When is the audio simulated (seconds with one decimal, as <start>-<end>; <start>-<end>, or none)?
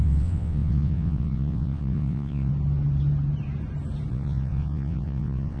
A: 0.0-2.5; 4.1-5.6